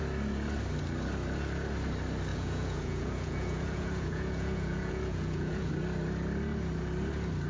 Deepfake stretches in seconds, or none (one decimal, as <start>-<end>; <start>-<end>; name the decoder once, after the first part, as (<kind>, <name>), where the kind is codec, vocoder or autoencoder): 2.3-5.7 (vocoder, Vocos)